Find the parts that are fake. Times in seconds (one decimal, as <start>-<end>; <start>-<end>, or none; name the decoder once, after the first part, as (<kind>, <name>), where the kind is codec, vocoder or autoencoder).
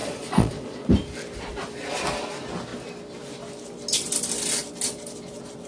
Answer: 0.0-0.9 (vocoder, Vocos)